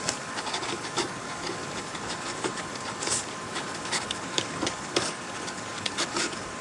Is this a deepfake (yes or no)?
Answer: yes